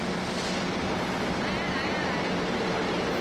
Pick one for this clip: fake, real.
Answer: real